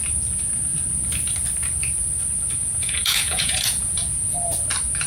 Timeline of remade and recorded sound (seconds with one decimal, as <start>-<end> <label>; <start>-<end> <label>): 0.0-2.6 recorded; 2.6-4.5 remade; 4.5-5.1 recorded